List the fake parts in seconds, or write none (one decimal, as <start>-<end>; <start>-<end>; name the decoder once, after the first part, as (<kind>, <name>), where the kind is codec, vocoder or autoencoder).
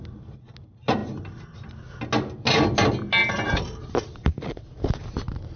3.2-5.0 (vocoder, BigVGAN v2)